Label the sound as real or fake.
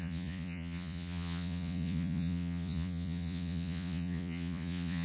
fake